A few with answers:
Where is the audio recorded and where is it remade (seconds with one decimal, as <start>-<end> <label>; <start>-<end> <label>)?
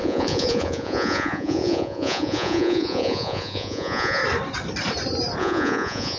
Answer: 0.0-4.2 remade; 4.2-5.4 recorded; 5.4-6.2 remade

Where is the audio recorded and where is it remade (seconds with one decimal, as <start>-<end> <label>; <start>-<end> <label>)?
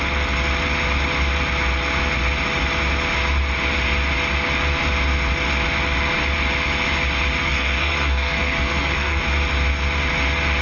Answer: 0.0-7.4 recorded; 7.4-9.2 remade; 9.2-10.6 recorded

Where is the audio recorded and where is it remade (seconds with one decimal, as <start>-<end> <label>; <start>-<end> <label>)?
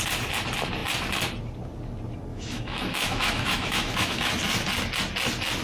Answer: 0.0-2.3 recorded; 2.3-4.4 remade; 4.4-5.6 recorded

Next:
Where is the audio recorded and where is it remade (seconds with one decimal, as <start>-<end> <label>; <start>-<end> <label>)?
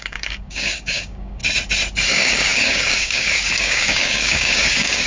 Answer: 0.0-1.4 remade; 1.4-2.1 recorded; 2.1-5.1 remade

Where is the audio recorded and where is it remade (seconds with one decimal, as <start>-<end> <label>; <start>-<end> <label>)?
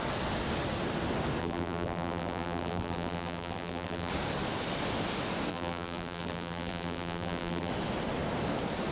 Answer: 0.0-1.4 recorded; 1.4-4.1 remade; 4.1-5.5 recorded; 5.5-7.7 remade; 7.7-8.9 recorded